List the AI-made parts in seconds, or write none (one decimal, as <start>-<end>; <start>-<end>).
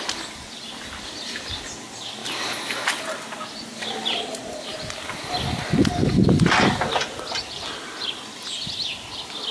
none